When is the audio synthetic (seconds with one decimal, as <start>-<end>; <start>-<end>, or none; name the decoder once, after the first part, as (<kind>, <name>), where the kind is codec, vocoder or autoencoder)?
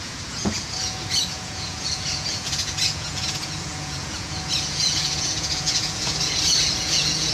0.0-7.3 (vocoder, Vocos)